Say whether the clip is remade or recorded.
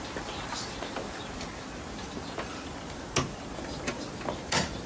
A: recorded